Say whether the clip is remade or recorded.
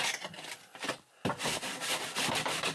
recorded